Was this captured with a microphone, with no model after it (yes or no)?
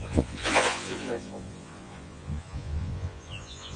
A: no